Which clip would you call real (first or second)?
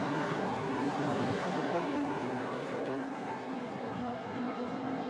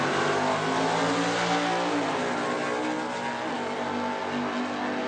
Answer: second